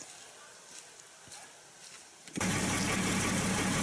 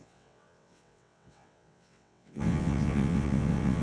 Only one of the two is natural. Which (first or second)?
first